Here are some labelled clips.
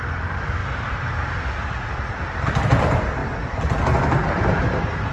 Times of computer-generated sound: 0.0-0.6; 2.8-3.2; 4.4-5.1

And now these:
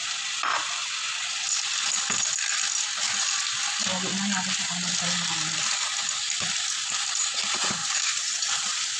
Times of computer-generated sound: 7.8-9.0

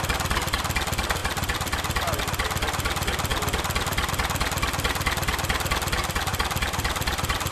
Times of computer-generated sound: 1.2-2.2; 3.3-4.1; 6.3-7.5

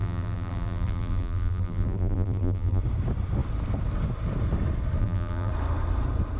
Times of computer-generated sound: 0.0-2.8; 5.0-5.5

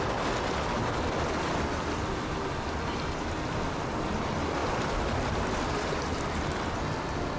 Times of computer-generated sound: none

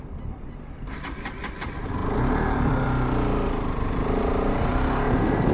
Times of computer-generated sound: 0.0-4.7

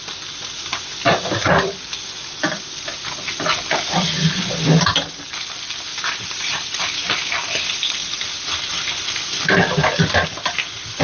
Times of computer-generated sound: 0.7-5.4; 5.9-7.2

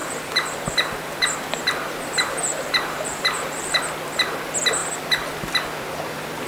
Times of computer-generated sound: 0.0-3.8